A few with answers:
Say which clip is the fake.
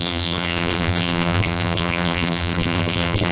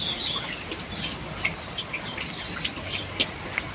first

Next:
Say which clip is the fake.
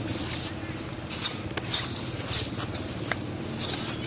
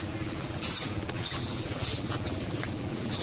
second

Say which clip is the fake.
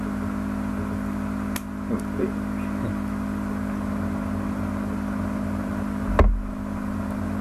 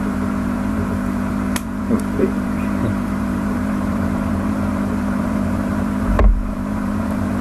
second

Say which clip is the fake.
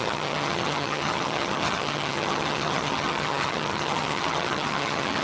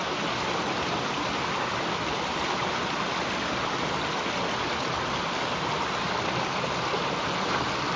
first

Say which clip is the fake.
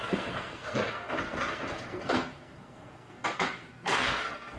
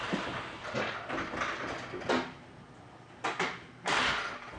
first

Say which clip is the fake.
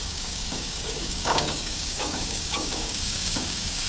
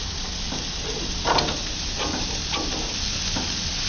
first